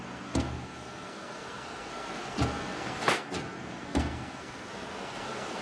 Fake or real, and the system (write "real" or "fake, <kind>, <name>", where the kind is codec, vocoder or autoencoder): fake, codec, SNAC